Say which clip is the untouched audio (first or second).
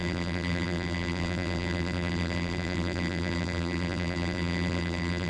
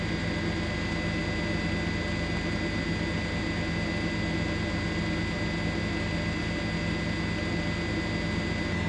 second